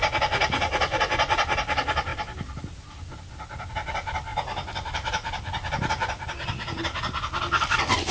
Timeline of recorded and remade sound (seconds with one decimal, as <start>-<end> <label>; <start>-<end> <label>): 0.0-8.1 recorded